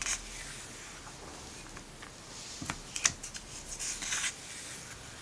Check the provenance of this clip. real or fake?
real